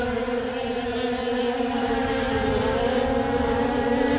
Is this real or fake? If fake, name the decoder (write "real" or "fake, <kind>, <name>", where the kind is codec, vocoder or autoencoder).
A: fake, vocoder, BigVGAN v2